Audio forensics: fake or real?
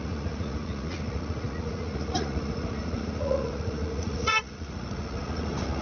fake